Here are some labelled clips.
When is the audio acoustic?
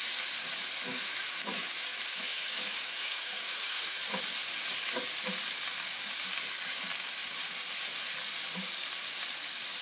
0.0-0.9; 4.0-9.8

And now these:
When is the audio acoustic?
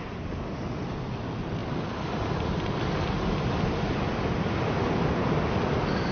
0.0-6.1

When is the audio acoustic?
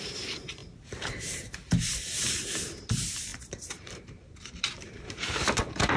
none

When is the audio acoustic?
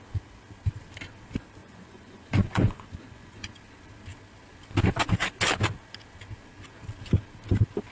0.0-1.6; 3.5-7.9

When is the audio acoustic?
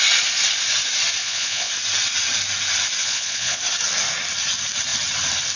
0.0-1.2; 1.7-3.0; 3.6-5.6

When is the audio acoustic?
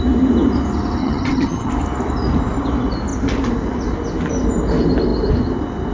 0.0-1.0; 1.7-5.9